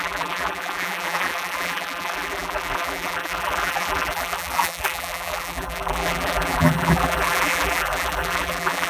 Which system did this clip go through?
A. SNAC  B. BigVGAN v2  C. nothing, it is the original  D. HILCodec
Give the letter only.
B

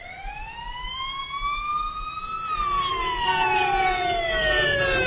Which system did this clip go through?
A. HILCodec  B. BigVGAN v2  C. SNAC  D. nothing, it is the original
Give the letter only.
D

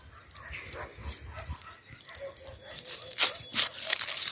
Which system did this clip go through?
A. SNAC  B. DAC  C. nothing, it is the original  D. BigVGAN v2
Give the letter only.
C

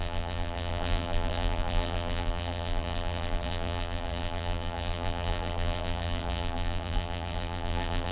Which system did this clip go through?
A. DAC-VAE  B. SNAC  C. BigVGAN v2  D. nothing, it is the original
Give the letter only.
C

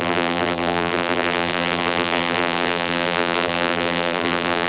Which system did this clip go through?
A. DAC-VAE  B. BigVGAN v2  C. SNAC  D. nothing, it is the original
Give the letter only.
B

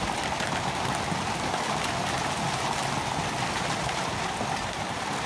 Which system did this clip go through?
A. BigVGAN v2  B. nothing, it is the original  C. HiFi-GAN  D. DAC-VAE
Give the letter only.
B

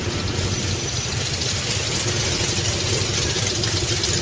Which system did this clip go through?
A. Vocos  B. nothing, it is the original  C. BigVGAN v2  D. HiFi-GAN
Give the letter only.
B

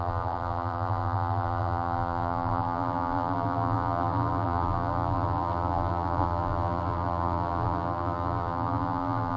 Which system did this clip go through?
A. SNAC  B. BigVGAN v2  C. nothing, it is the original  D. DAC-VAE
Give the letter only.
B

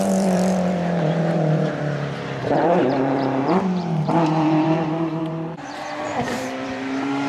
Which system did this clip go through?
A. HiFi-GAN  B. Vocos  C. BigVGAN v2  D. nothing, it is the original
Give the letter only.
C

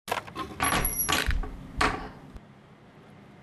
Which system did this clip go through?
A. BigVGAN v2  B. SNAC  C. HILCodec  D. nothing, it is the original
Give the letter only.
D